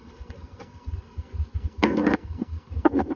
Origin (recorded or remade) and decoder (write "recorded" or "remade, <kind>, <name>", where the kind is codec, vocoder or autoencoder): remade, codec, SNAC